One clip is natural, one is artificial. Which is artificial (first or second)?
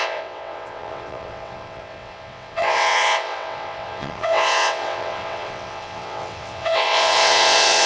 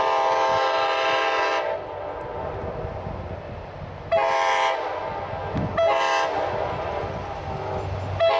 first